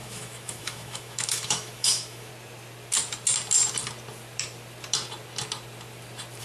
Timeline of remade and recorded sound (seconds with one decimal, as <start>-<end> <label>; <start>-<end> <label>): 0.0-2.3 remade; 2.3-6.4 recorded